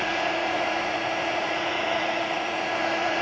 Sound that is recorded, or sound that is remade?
remade